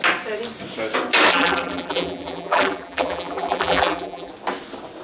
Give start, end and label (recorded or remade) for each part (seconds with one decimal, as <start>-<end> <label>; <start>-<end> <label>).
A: 0.0-1.3 recorded; 1.3-4.3 remade; 4.3-5.0 recorded